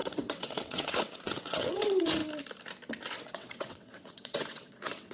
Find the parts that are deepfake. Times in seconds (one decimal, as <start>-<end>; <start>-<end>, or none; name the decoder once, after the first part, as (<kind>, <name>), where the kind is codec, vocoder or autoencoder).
0.0-2.2 (vocoder, WaveNeXt); 3.2-5.1